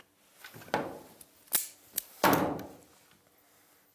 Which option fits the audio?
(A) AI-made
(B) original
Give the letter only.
B